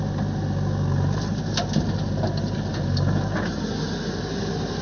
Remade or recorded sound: recorded